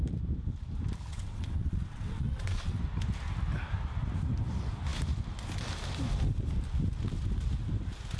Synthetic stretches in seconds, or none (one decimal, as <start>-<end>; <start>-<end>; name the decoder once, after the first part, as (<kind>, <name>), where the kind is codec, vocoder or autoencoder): 1.1-2.8 (vocoder, WaveNeXt)